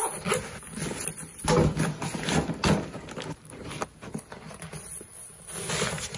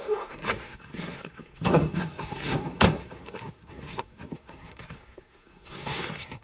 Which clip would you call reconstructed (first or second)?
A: second